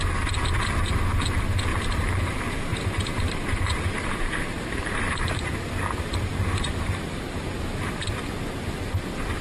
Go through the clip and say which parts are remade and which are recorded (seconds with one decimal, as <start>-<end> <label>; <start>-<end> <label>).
0.0-1.7 recorded; 1.7-2.3 remade; 2.3-2.7 recorded; 2.7-5.4 remade; 5.4-6.3 recorded; 6.3-7.8 remade; 7.8-9.4 recorded